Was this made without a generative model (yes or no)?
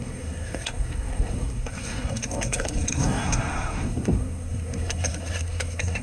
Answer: no